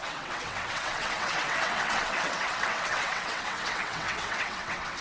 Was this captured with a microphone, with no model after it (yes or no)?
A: no